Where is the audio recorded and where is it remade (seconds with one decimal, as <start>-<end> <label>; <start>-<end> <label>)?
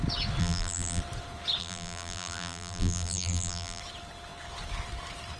0.0-0.4 recorded; 0.4-1.0 remade; 1.0-1.6 recorded; 1.6-3.8 remade; 3.8-5.4 recorded